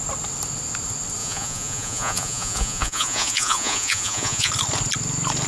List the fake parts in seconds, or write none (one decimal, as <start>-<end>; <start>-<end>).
1.2-4.5